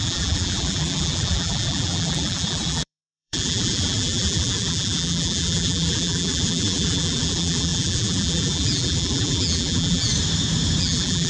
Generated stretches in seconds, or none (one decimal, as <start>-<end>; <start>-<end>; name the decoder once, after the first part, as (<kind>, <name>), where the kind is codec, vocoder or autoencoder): 0.0-10.1 (vocoder, BigVGAN v2); 10.8-11.3